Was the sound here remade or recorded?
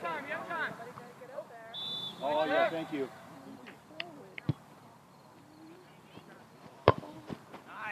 remade